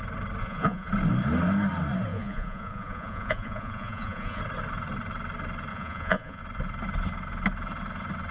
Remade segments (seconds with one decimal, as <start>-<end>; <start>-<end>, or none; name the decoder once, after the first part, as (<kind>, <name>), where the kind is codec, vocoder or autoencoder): 0.4-0.9 (vocoder, Vocos); 2.1-4.4; 5.7-6.4